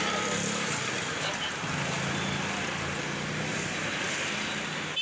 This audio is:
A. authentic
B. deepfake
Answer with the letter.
B